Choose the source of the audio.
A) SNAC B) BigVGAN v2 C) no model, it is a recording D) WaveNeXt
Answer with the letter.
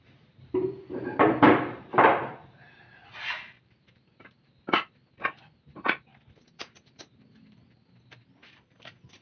B